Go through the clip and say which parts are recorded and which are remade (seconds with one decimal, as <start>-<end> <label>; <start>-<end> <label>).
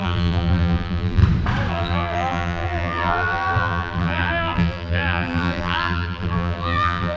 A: 0.0-1.2 remade; 1.2-1.7 recorded; 1.7-7.2 remade